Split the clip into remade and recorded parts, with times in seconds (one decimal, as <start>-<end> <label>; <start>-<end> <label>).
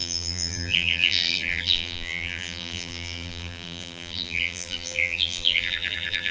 0.0-6.3 remade